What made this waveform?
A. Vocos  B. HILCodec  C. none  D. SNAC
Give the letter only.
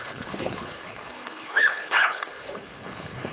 B